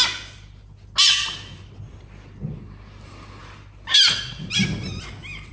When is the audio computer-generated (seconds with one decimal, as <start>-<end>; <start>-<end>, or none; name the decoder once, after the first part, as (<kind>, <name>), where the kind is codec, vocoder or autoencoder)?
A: none